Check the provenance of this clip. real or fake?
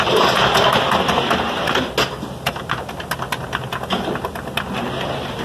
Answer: real